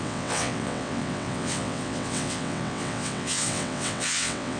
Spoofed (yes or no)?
yes